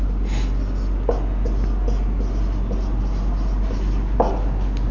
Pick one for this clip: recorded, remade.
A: recorded